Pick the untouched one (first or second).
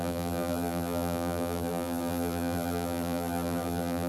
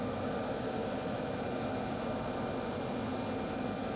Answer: second